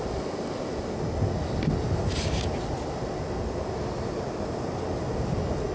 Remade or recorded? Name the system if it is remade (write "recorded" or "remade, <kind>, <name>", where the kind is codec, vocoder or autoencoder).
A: recorded